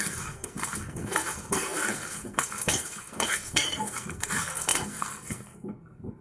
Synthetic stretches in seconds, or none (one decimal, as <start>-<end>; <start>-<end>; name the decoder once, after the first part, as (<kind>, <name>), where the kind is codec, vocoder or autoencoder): 0.0-6.2 (codec, SNAC)